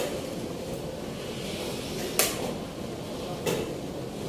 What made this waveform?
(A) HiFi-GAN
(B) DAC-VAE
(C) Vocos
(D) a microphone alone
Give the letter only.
D